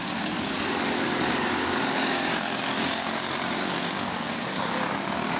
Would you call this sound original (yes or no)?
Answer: no